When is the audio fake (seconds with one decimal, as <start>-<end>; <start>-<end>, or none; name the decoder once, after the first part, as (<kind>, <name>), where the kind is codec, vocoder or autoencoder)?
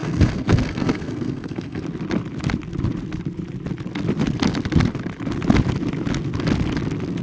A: 0.0-1.8 (codec, SNAC)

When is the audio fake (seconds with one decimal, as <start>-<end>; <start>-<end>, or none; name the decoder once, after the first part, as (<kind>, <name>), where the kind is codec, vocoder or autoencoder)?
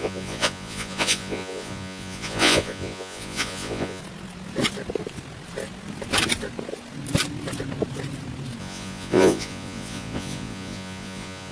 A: 0.0-4.0 (vocoder, Vocos); 8.6-11.5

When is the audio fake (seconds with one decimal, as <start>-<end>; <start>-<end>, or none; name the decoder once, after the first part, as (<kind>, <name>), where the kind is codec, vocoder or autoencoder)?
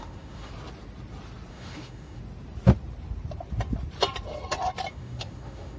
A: 0.0-0.5 (autoencoder, DAC-VAE); 1.5-2.2; 4.9-5.8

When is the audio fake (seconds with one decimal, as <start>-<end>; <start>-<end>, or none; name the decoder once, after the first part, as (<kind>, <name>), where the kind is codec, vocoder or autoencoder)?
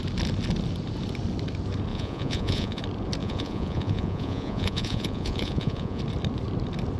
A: 1.9-2.8 (vocoder, Vocos); 3.2-6.0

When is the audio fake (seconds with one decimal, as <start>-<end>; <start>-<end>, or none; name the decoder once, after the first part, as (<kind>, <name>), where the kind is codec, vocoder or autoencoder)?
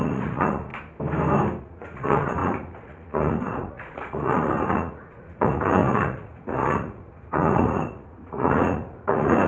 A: 0.0-0.7 (vocoder, Vocos); 1.6-9.5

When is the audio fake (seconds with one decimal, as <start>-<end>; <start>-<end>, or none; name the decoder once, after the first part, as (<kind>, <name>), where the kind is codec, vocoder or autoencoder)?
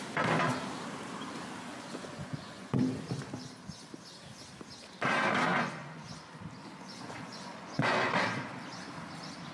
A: 1.7-2.8 (vocoder, Vocos); 5.5-6.1; 6.6-8.2